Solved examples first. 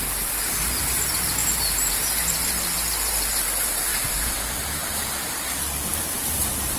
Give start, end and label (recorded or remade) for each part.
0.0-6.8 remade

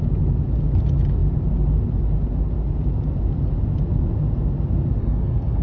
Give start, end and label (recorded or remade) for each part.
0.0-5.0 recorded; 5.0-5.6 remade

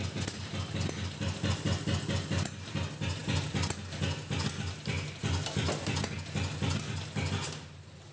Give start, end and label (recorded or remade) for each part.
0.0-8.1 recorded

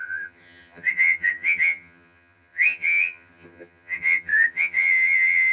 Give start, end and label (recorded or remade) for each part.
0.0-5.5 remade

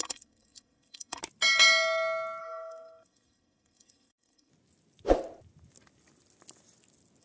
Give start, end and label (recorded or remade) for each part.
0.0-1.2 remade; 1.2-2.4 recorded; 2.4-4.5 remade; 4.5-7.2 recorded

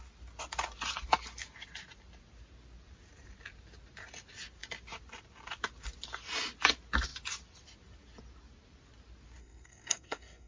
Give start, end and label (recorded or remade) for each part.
0.0-9.4 recorded; 9.4-10.5 remade